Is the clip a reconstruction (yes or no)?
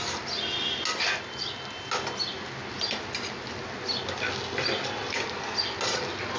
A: no